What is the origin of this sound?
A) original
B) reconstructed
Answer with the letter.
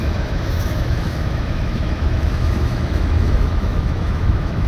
B